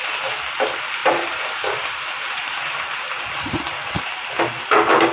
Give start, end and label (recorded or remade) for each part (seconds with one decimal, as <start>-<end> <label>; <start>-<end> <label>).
0.0-1.0 recorded; 1.0-4.1 remade; 4.1-5.1 recorded